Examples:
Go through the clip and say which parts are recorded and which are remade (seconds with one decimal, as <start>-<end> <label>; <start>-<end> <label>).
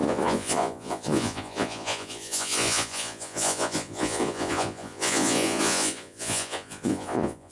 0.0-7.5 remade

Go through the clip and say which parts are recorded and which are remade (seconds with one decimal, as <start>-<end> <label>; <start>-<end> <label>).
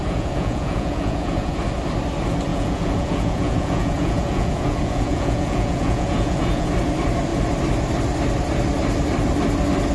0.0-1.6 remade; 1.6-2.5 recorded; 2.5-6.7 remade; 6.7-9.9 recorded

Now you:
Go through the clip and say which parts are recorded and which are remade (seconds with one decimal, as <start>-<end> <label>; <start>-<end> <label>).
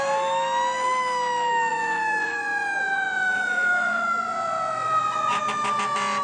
0.0-1.7 recorded; 1.7-5.4 remade; 5.4-6.2 recorded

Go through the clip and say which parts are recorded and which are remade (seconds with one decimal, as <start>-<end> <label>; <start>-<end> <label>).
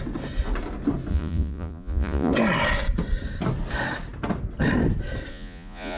0.0-1.1 recorded; 1.1-2.3 remade; 2.3-5.3 recorded; 5.3-6.0 remade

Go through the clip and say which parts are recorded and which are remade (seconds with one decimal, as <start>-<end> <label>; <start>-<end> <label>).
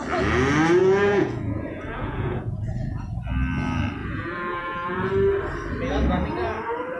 0.0-0.8 recorded; 0.8-3.2 remade; 3.2-4.0 recorded; 4.0-5.1 remade; 5.1-7.0 recorded